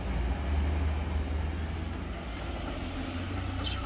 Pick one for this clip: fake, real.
real